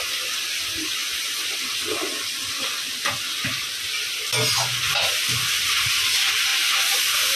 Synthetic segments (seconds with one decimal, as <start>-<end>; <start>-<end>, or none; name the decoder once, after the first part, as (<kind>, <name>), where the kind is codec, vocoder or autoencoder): none